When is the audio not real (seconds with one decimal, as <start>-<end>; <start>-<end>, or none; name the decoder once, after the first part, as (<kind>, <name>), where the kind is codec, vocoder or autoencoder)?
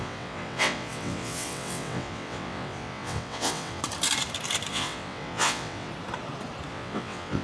0.0-3.8 (vocoder, WaveNeXt); 4.7-5.9; 6.7-7.4